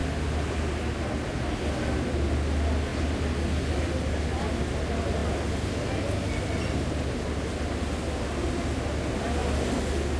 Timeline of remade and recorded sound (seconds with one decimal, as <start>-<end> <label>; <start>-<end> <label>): 0.0-10.2 recorded

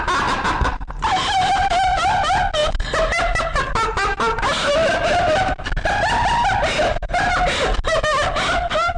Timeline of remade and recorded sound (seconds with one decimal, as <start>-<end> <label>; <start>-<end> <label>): 0.0-9.0 recorded